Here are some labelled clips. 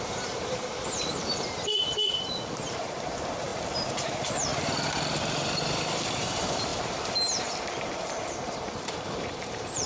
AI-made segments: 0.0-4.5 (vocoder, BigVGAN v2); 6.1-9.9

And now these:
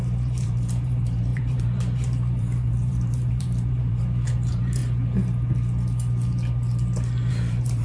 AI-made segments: 0.0-4.8 (vocoder, BigVGAN v2); 7.3-7.8

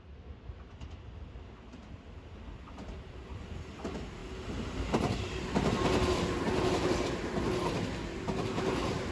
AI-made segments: none